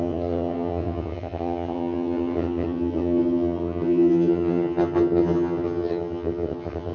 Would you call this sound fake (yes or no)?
yes